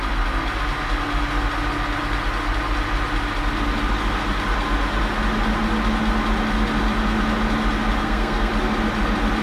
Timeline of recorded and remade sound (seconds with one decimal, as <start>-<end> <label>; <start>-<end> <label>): 0.0-8.0 recorded; 8.0-8.5 remade; 8.5-9.4 recorded